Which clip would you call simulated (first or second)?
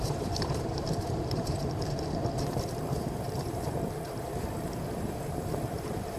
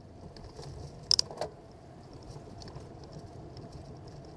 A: first